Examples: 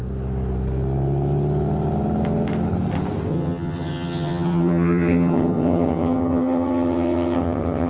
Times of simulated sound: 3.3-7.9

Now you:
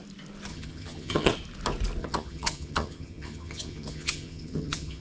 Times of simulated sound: 0.5-1.3; 2.0-5.0

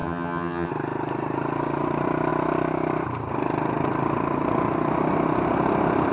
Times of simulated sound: 0.0-0.7

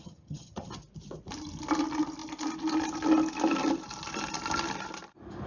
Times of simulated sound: 0.0-0.7

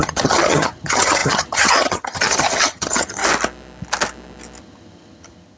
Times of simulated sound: 0.0-3.2; 4.6-5.6

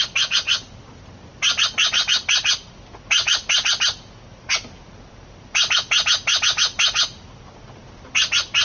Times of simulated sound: none